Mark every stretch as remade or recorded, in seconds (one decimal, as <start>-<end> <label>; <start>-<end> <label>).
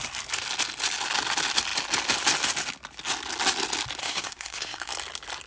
0.0-4.0 recorded; 4.0-4.9 remade; 4.9-5.5 recorded